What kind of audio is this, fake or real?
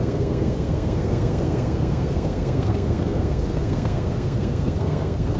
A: fake